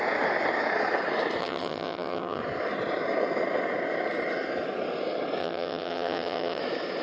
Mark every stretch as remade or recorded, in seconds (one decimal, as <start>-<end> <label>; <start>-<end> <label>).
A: 0.0-1.4 recorded; 1.4-2.4 remade; 2.4-5.4 recorded; 5.4-6.6 remade; 6.6-7.0 recorded

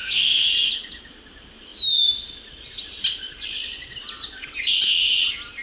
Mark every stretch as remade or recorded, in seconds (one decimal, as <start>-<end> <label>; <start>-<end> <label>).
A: 0.0-0.5 remade; 0.5-5.6 recorded

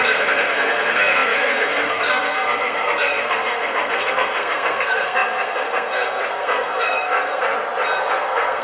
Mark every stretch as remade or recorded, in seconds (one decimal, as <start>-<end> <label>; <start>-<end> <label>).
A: 0.0-7.5 remade; 7.5-8.1 recorded; 8.1-8.6 remade

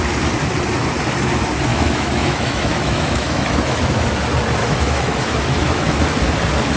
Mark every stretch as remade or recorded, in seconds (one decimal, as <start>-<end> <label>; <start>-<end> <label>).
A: 0.0-1.7 recorded; 1.7-3.9 remade; 3.9-4.6 recorded; 4.6-6.0 remade; 6.0-6.8 recorded